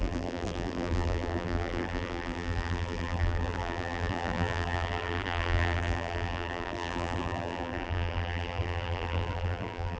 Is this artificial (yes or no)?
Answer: yes